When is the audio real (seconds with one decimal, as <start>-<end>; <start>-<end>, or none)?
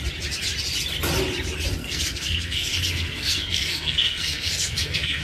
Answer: 0.0-1.8